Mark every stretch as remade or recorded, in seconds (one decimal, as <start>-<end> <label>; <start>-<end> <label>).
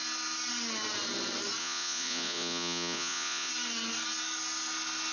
0.0-1.6 recorded; 1.6-3.5 remade; 3.5-5.1 recorded